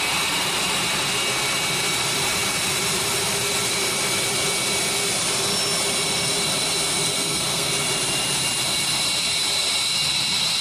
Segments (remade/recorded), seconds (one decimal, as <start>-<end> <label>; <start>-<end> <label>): 0.0-7.1 recorded; 7.1-7.7 remade; 7.7-10.6 recorded